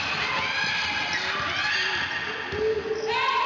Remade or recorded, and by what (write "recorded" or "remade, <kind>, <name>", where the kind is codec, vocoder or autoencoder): recorded